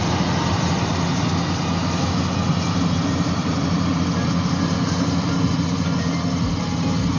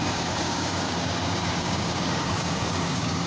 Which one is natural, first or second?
first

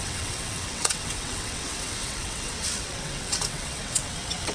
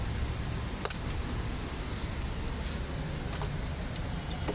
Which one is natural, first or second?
second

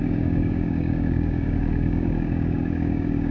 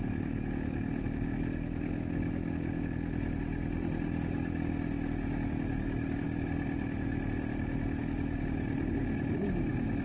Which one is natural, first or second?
second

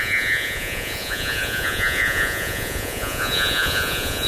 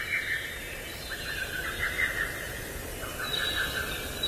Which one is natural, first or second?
second